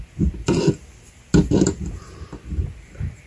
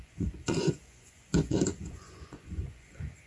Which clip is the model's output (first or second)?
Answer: second